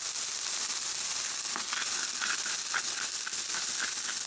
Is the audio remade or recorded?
recorded